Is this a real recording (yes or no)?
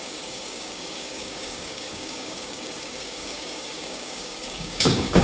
no